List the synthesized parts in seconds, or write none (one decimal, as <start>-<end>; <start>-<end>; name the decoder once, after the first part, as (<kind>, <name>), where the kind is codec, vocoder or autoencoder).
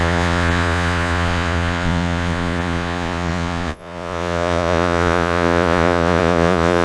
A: 0.0-6.8 (vocoder, Vocos)